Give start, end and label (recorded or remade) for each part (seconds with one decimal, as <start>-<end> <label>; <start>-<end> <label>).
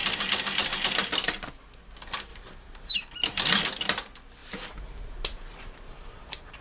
0.0-2.3 recorded; 2.3-2.9 remade; 2.9-4.4 recorded; 4.4-6.6 remade